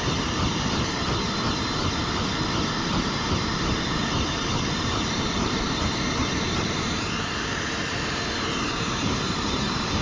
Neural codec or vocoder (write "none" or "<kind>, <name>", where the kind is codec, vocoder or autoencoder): vocoder, BigVGAN v2